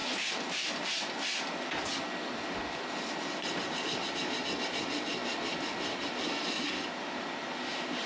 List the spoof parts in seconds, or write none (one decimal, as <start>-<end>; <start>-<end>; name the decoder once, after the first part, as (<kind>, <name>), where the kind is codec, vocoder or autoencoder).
none